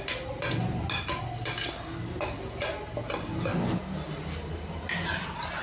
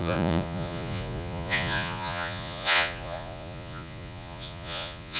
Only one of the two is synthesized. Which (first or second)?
second